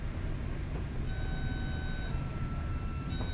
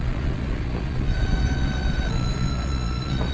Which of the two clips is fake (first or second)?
second